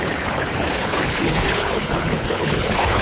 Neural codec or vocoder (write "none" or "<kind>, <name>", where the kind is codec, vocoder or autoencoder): codec, HILCodec